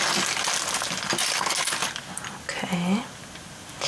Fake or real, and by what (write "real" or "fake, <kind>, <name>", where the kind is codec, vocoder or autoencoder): real